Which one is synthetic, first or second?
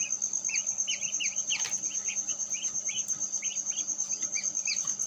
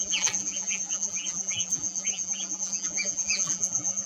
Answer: second